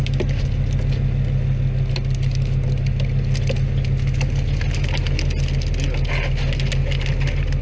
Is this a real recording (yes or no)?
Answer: yes